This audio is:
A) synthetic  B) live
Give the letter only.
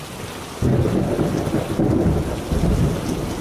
B